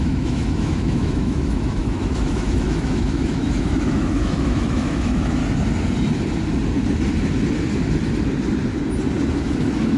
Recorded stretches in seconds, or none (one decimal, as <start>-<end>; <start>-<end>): 5.4-9.4